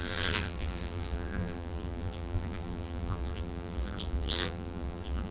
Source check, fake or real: fake